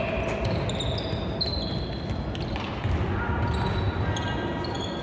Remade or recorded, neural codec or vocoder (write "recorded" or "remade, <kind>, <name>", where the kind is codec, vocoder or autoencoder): recorded